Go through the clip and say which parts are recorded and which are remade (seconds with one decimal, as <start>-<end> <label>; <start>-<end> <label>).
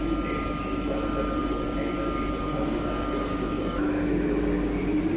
0.0-2.5 recorded; 2.5-4.1 remade; 4.1-5.2 recorded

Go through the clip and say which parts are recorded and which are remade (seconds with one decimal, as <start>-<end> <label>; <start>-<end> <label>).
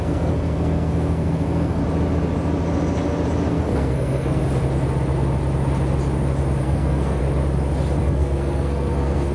0.0-1.8 remade; 1.8-3.5 recorded; 3.5-4.4 remade; 4.4-6.6 recorded; 6.6-7.2 remade; 7.2-8.0 recorded; 8.0-9.3 remade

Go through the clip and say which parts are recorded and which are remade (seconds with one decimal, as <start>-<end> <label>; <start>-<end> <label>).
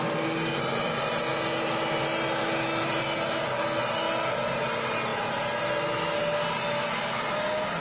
0.0-7.8 recorded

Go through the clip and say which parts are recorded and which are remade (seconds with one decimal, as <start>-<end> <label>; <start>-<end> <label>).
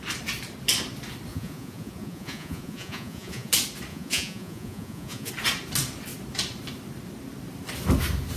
0.0-1.3 recorded; 1.3-3.5 remade; 3.5-3.9 recorded; 3.9-5.3 remade; 5.3-8.4 recorded